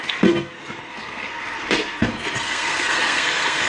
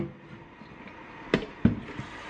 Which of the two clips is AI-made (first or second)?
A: first